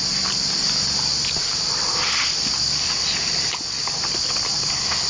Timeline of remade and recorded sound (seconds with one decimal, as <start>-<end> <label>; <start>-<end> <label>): 0.0-5.1 recorded